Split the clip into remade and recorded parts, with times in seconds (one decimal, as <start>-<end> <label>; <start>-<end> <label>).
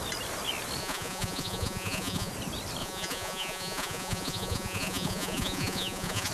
0.0-0.8 recorded; 0.8-2.3 remade; 2.3-2.8 recorded; 2.8-6.3 remade